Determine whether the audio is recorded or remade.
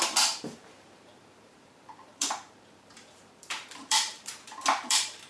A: remade